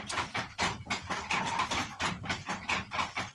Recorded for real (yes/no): no